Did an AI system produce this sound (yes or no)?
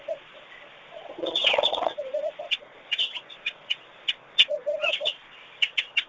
yes